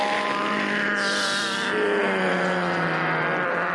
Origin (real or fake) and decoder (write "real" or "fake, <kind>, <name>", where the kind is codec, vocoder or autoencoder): real